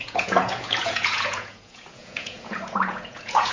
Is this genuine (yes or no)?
no